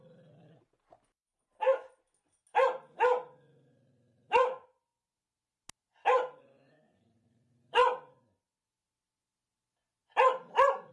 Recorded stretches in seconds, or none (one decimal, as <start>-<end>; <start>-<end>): 0.0-10.9